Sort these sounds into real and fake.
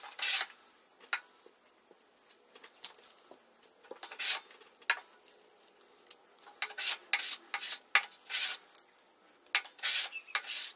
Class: real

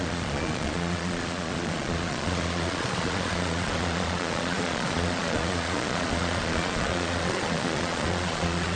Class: fake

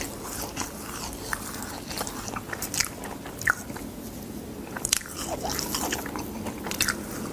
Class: real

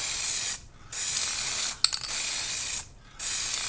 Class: real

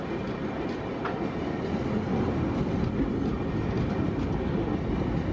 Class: real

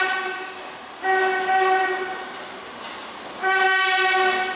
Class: real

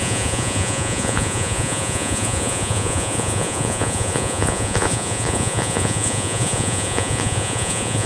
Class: fake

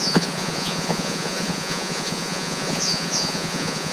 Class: fake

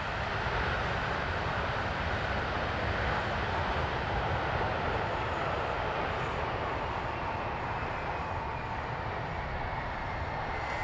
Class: real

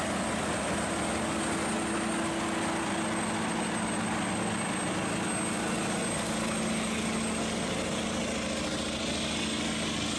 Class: real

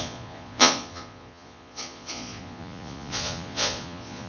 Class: fake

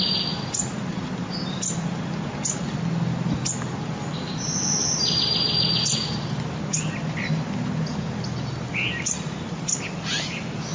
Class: real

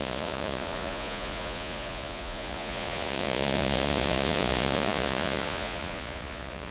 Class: fake